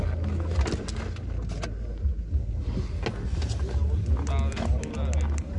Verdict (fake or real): real